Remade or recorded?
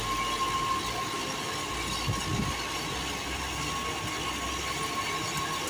recorded